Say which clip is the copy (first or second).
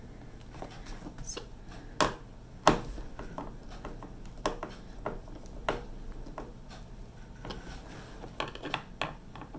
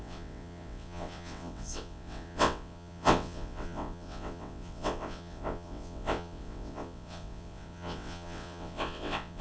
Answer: second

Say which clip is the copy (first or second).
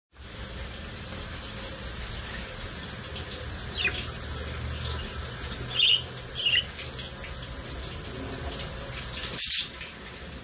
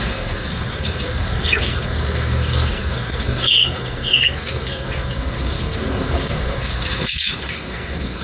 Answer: second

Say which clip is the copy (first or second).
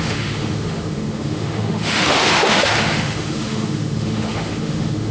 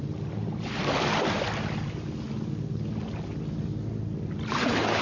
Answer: first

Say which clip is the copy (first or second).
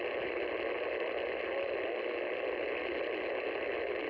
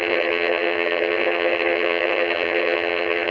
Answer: second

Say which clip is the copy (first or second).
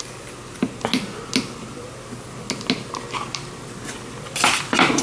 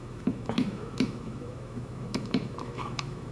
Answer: second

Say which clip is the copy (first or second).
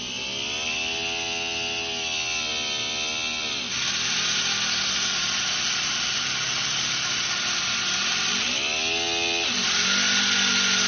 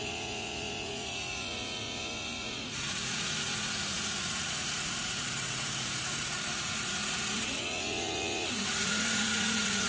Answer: second